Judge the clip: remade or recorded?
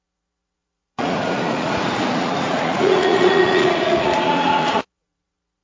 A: remade